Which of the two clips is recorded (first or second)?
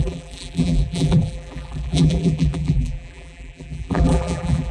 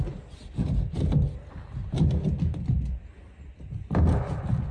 second